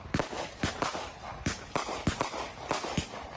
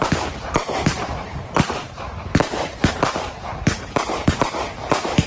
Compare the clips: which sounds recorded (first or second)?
first